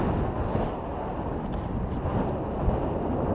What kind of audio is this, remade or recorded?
recorded